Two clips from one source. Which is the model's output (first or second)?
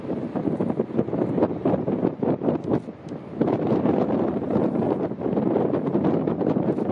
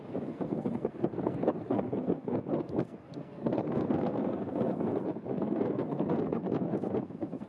second